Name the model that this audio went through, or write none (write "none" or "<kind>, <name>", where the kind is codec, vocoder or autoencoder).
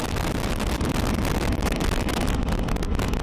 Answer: none